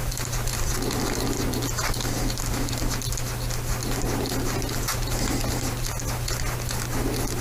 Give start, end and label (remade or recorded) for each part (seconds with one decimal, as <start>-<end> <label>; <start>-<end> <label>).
0.0-1.2 remade; 1.2-7.4 recorded